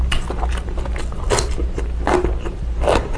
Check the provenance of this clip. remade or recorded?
recorded